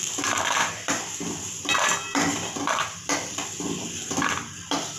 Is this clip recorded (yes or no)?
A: no